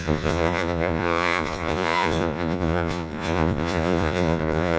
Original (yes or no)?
no